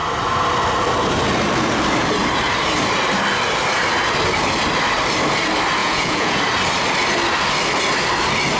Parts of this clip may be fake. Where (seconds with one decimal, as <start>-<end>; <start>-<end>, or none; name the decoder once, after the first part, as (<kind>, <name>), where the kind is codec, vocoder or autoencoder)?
5.8-6.4 (vocoder, Vocos)